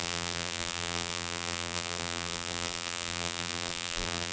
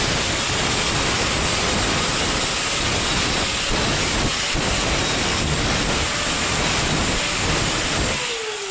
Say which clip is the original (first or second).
second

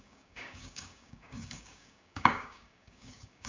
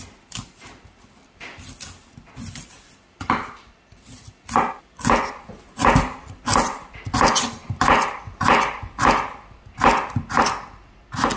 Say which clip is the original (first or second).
second